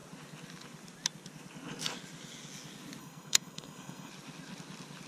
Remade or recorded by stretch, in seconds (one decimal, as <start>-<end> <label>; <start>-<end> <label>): 0.0-3.0 recorded; 3.0-4.1 remade; 4.1-5.1 recorded